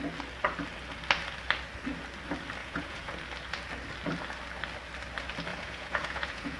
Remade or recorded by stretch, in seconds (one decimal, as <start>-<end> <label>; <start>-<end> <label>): 0.0-2.6 recorded; 2.6-3.2 remade; 3.2-5.5 recorded; 5.5-6.6 remade